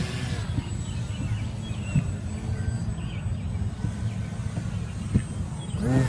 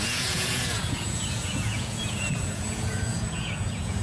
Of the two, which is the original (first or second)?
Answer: first